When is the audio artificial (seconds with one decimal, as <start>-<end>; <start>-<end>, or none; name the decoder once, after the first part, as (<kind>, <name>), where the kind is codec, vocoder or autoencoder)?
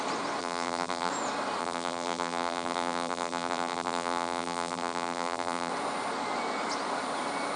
0.4-1.1 (vocoder, BigVGAN v2); 1.6-5.7